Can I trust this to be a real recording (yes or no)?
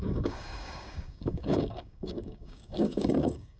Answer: no